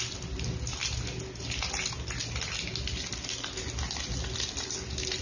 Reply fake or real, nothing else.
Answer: real